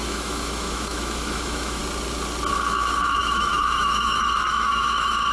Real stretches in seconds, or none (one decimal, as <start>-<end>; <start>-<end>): 1.8-2.5